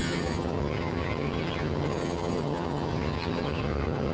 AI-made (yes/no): yes